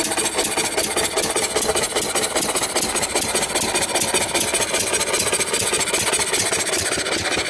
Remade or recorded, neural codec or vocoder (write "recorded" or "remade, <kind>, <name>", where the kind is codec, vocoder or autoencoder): recorded